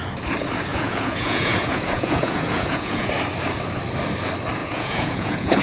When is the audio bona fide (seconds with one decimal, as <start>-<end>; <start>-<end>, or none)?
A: 0.0-0.7; 3.1-4.6